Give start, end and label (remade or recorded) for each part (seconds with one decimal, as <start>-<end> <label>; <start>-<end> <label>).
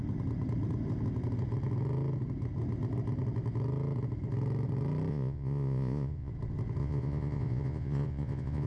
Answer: 0.0-5.1 recorded; 5.1-6.3 remade; 6.3-6.8 recorded; 6.8-8.7 remade